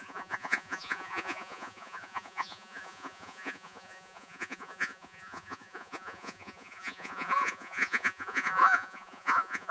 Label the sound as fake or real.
fake